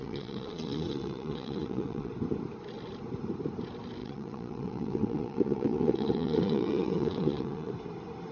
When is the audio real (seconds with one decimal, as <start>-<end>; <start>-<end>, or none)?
2.1-4.0; 7.7-8.3